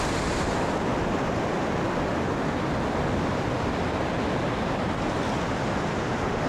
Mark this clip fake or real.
real